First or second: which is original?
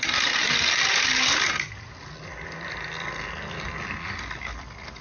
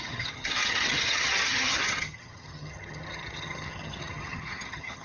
first